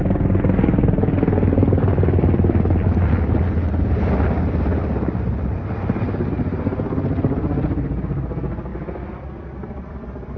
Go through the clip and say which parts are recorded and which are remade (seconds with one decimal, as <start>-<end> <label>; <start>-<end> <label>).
0.0-10.4 recorded